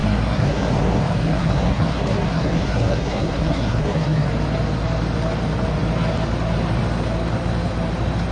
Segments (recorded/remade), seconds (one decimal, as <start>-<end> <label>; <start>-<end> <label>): 0.0-4.3 remade; 4.3-8.3 recorded